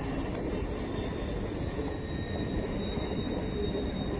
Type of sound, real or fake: real